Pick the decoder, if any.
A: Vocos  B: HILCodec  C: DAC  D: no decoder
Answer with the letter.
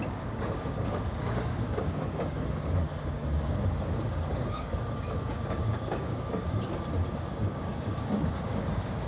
C